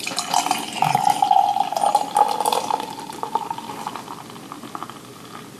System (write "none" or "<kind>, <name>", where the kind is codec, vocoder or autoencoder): none